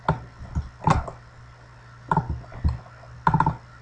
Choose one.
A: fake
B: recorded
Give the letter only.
B